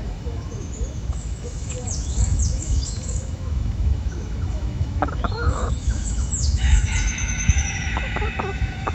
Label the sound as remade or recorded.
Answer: remade